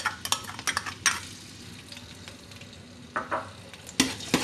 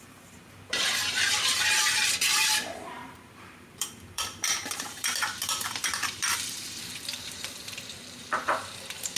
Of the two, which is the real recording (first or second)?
first